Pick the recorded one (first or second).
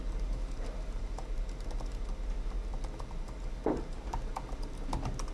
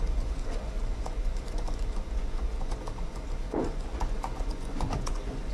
first